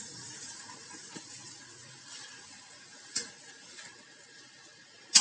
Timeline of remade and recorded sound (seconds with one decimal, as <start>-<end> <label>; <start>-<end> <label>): 0.0-5.2 remade